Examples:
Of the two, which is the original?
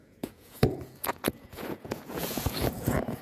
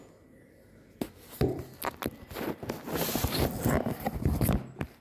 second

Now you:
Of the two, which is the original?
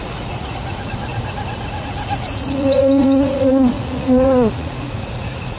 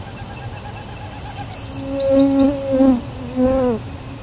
second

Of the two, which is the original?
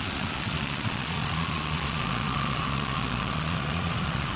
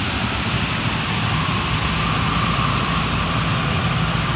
second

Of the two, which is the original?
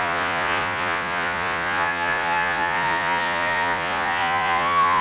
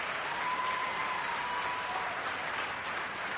second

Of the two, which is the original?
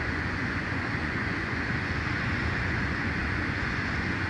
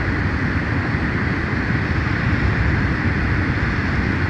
second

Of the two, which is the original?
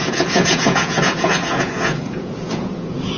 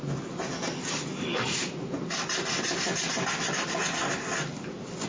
second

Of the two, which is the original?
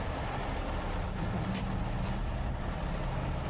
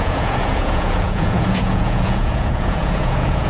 first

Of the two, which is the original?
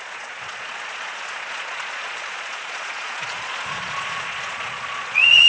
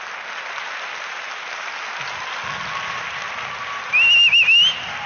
second